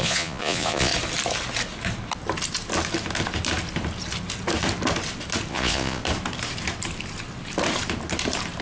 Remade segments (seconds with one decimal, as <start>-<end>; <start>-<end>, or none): 0.0-0.9; 5.5-6.0